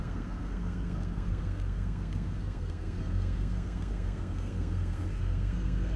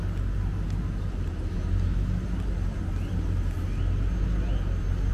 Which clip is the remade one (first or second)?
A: first